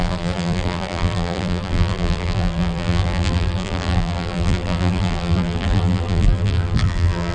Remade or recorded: remade